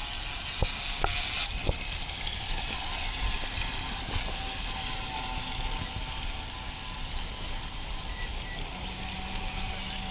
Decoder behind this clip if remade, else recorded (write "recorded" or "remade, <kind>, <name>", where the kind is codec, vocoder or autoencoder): recorded